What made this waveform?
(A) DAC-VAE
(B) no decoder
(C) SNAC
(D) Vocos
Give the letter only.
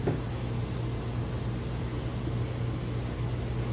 B